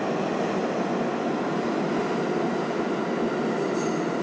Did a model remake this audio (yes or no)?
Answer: no